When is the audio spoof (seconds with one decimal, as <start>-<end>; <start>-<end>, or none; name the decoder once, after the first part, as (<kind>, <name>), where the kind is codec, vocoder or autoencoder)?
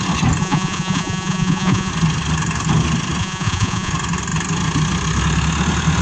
0.4-1.9 (vocoder, Vocos); 3.2-3.9